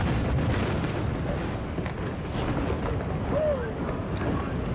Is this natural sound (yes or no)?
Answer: yes